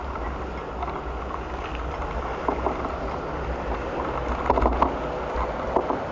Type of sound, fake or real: real